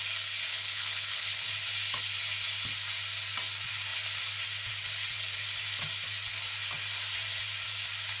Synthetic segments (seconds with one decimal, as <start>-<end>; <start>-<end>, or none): 0.5-1.5